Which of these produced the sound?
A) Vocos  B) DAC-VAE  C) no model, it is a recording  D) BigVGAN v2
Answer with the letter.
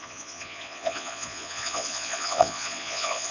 A